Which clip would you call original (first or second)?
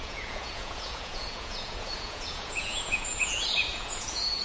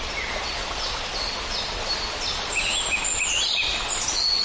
second